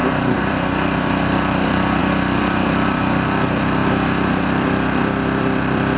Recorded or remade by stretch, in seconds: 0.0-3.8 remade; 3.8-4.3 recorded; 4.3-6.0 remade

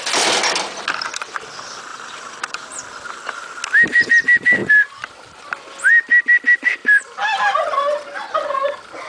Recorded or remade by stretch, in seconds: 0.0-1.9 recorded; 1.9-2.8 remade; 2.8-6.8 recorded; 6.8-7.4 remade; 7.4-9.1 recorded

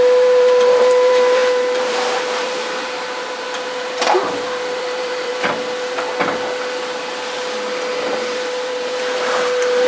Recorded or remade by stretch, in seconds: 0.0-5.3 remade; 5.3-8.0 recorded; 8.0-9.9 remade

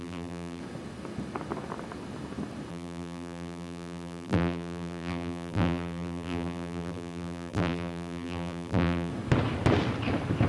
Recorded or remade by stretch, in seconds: 0.0-0.6 remade; 0.6-2.7 recorded; 2.7-9.1 remade; 9.1-10.5 recorded